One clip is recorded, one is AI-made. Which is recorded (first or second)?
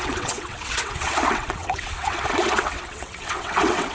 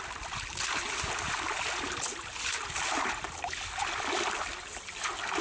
second